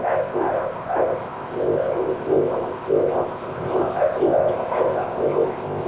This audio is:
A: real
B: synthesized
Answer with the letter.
B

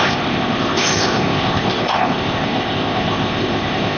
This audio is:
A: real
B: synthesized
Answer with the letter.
B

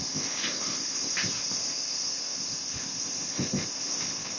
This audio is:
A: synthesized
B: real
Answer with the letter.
A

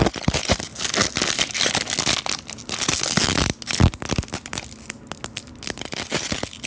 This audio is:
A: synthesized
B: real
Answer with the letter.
B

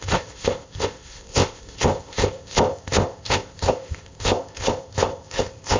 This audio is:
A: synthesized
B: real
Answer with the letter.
A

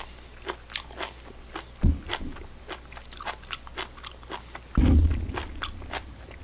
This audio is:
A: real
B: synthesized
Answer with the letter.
A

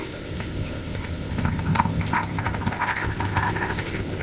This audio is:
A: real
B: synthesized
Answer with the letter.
B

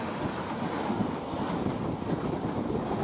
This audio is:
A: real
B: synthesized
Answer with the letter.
A